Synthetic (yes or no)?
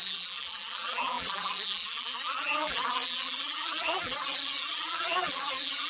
yes